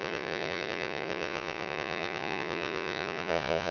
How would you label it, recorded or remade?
remade